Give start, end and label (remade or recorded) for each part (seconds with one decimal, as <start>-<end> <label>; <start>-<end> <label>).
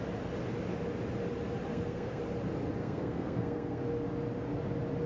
0.0-1.7 recorded; 1.7-2.2 remade; 2.2-2.8 recorded; 2.8-3.8 remade; 3.8-5.1 recorded